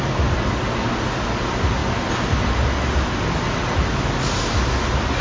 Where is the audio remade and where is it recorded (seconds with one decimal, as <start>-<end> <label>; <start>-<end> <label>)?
0.0-5.2 recorded